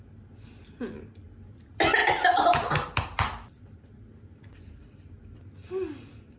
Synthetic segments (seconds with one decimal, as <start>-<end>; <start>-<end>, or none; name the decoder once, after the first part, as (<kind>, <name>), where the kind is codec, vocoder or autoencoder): none